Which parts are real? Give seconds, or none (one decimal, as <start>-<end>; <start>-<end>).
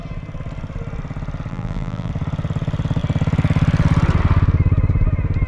0.0-1.5; 2.1-5.5